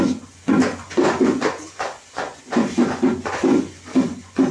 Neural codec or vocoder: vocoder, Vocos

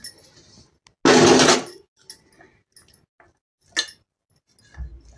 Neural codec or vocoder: none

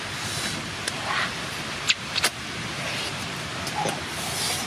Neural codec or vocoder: none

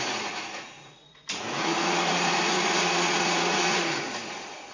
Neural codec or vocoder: vocoder, Vocos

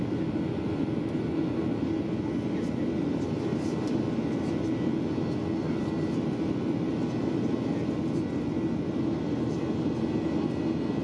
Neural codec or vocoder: none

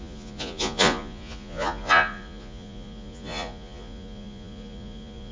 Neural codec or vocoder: vocoder, Vocos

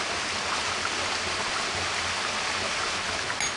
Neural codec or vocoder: none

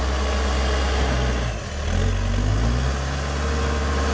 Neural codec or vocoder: none